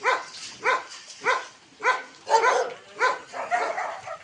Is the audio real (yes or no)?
yes